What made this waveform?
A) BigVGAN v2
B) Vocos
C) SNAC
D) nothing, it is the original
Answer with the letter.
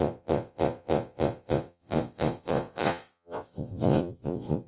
B